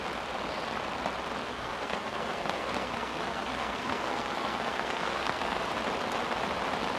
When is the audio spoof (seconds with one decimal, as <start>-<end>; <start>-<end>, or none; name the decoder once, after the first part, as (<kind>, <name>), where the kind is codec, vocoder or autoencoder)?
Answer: 1.4-5.6 (codec, SNAC)